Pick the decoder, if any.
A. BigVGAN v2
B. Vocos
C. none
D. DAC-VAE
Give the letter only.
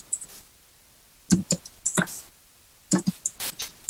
C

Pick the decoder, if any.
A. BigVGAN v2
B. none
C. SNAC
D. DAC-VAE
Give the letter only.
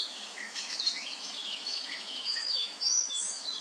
D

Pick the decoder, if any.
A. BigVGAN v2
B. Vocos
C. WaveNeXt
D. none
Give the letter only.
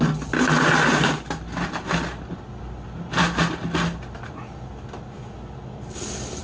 D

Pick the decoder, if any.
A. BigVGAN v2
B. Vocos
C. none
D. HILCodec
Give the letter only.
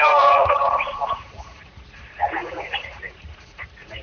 B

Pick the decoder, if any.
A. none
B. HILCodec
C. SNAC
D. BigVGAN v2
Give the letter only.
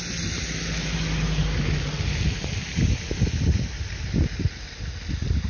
A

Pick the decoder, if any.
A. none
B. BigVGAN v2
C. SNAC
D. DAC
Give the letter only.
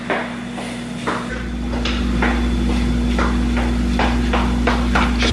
A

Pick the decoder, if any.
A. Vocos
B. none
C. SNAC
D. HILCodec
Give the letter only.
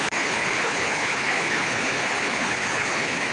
D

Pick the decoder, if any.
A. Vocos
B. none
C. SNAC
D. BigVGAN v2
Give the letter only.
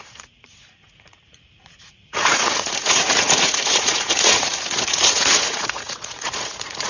A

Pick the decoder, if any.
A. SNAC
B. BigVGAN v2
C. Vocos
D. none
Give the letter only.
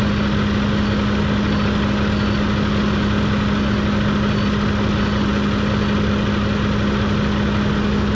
D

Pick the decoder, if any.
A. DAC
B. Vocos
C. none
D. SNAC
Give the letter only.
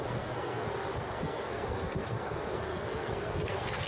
D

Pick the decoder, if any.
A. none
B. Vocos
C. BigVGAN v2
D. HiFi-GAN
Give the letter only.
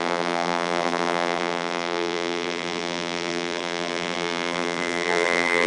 C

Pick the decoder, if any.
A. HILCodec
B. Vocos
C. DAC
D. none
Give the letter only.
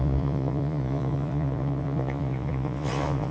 B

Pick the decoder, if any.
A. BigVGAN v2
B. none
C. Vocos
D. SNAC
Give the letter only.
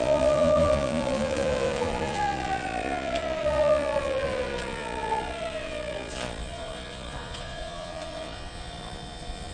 C